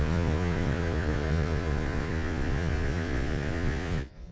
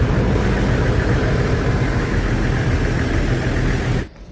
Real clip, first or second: second